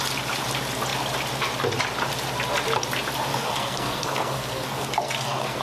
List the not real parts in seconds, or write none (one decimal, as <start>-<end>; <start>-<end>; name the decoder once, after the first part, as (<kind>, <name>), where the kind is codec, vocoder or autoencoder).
3.3-5.6 (codec, SNAC)